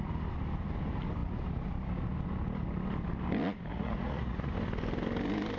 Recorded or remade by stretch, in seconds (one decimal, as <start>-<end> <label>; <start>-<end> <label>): 0.0-3.7 recorded; 3.7-4.5 remade; 4.5-5.6 recorded